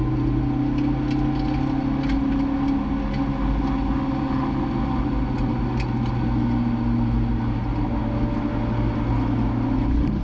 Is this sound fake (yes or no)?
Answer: no